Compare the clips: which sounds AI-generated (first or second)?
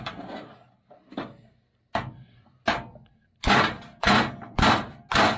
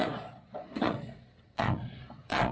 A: second